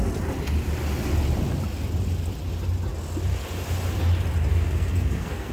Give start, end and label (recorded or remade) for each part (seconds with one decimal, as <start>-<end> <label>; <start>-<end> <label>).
0.0-4.5 recorded; 4.5-5.5 remade